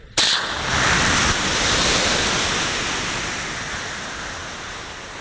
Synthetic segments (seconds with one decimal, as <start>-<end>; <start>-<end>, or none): 0.7-3.3; 4.4-5.2